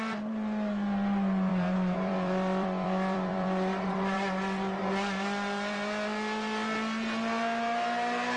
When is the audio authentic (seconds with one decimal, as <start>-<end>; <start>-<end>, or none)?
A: 0.0-1.5; 4.8-8.4